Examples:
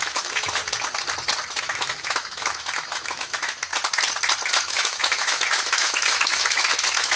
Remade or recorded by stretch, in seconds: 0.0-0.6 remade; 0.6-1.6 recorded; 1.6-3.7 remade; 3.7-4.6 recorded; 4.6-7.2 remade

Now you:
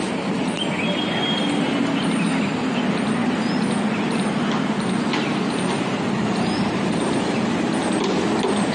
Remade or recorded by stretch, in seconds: 0.0-8.7 recorded

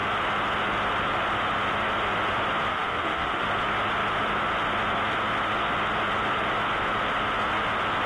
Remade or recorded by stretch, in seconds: 0.0-2.7 recorded; 2.7-3.5 remade; 3.5-8.1 recorded

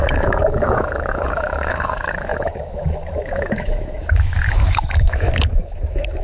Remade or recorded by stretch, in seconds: 0.0-6.2 remade

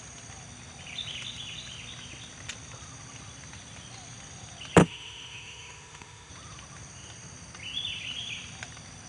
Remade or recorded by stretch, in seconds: 0.0-4.8 recorded; 4.8-6.3 remade; 6.3-9.1 recorded

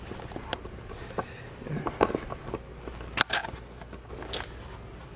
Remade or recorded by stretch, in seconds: 0.0-5.2 recorded